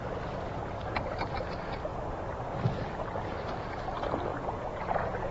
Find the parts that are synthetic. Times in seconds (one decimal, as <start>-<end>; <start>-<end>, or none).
4.3-5.3